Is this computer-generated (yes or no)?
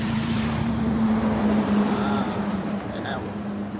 yes